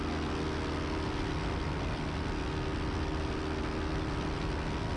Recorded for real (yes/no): yes